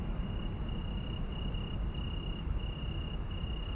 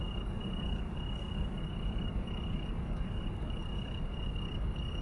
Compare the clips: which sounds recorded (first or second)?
first